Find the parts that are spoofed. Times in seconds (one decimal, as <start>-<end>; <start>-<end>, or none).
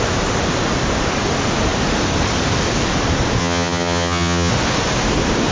3.4-4.5